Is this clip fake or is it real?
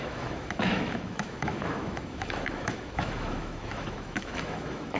fake